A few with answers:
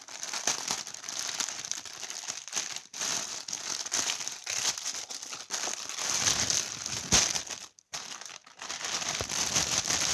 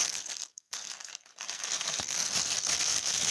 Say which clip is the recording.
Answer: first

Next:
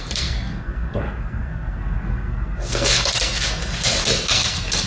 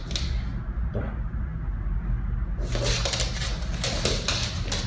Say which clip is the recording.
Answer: second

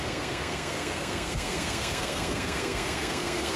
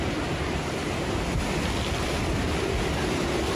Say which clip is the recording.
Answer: second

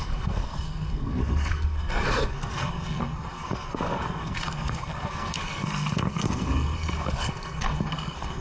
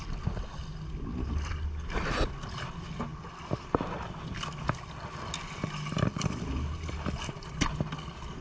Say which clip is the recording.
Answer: second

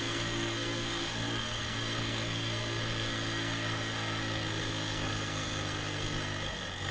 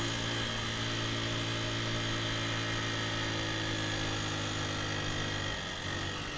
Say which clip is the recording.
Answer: second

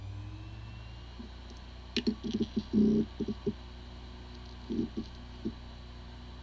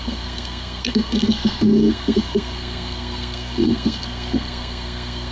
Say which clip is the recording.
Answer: first